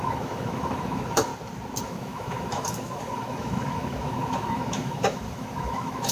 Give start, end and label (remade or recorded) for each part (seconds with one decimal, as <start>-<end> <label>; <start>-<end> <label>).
0.0-1.3 remade; 1.3-1.8 recorded; 1.8-6.1 remade